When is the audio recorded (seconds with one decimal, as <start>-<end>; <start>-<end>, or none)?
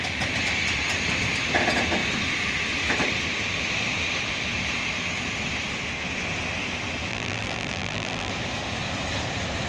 0.0-7.1; 8.3-9.7